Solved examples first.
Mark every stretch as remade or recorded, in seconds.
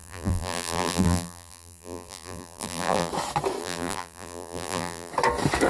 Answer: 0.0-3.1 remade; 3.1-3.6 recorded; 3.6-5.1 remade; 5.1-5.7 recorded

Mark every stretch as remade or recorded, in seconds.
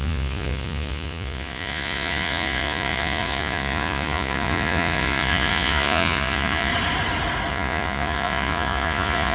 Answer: 0.0-6.7 remade; 6.7-7.5 recorded; 7.5-9.3 remade